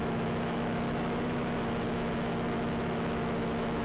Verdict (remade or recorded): remade